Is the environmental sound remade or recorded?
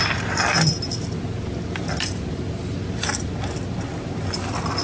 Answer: recorded